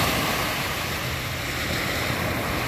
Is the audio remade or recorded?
recorded